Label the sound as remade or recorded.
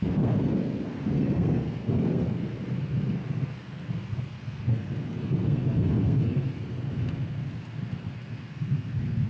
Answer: remade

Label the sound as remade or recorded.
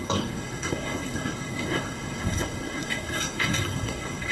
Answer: remade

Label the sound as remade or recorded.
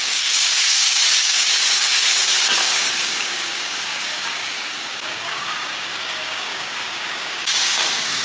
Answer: remade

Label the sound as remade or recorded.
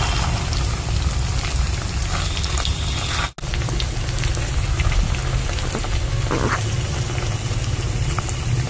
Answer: recorded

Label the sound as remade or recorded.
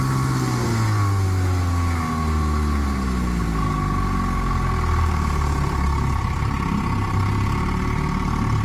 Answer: recorded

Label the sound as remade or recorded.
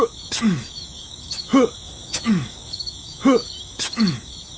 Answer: remade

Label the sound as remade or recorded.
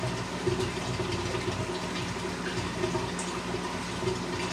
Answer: recorded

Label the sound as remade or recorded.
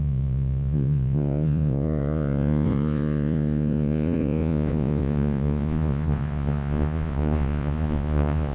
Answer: remade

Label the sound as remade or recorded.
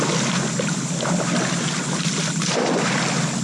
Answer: recorded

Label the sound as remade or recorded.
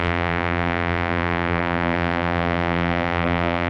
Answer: remade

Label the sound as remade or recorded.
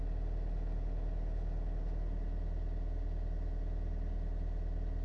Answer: recorded